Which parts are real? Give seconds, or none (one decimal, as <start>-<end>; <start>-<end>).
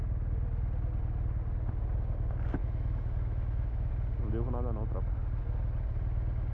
0.0-2.6; 3.9-6.5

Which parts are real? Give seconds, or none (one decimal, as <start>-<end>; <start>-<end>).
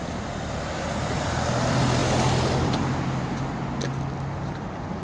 0.0-5.0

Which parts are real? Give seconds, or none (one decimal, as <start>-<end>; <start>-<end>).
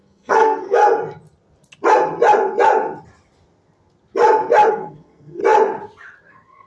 0.8-4.7; 5.4-6.3